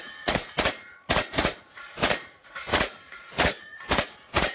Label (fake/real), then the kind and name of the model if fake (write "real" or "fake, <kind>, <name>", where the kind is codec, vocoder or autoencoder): fake, vocoder, Vocos